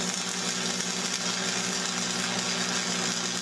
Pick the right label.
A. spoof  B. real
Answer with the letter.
B